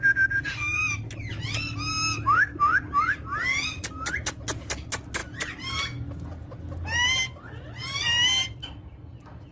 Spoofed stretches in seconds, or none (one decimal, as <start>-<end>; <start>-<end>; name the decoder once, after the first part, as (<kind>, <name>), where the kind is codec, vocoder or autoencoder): 0.6-1.5 (vocoder, BigVGAN v2); 5.2-5.7